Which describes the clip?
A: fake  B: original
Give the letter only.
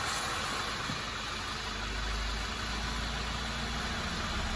B